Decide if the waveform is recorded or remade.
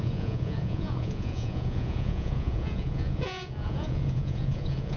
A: remade